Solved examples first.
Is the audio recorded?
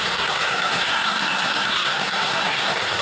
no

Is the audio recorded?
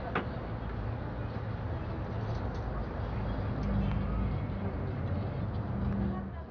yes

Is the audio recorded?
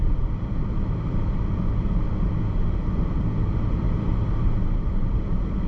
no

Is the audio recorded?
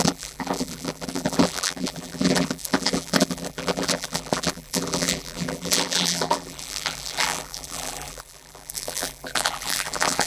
no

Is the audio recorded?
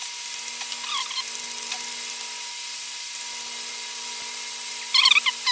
yes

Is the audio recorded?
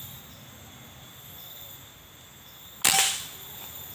yes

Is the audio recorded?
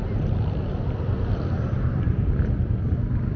yes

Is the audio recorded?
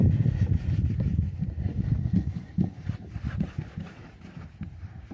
yes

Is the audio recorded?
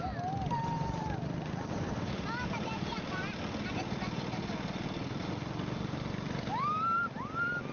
yes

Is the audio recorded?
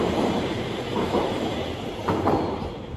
no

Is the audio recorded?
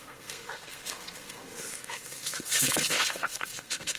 no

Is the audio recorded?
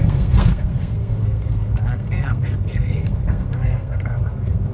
no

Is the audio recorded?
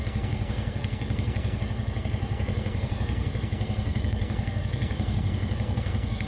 no